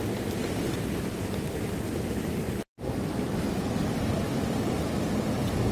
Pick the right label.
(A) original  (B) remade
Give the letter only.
A